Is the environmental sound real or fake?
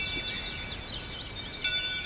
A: real